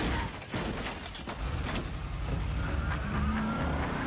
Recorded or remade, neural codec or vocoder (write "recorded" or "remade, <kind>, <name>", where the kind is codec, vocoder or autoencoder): recorded